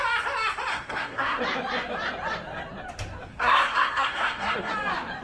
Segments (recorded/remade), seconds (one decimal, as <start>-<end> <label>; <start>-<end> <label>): 0.0-0.7 recorded; 0.7-1.4 remade; 1.4-3.3 recorded; 3.3-4.7 remade; 4.7-5.2 recorded